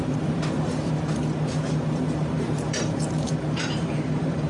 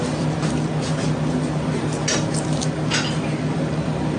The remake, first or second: first